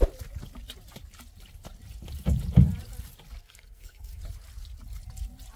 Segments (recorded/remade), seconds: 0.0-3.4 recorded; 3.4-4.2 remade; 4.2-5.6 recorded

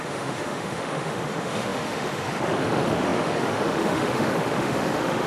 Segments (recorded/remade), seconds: 0.0-5.3 remade

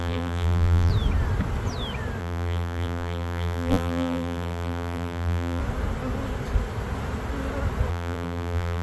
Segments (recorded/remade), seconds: 0.0-0.9 remade; 0.9-2.2 recorded; 2.2-5.6 remade; 5.6-7.9 recorded; 7.9-8.8 remade

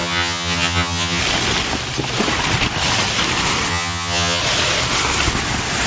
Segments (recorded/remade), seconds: 0.0-1.2 remade; 1.2-3.7 recorded; 3.7-4.4 remade; 4.4-5.9 recorded

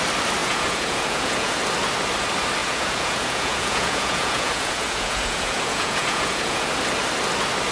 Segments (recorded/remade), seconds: 0.0-0.4 recorded; 0.4-1.6 remade; 1.6-2.6 recorded; 2.6-6.7 remade; 6.7-7.7 recorded